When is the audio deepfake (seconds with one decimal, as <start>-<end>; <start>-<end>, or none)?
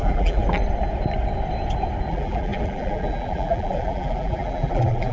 0.0-0.4; 2.1-5.1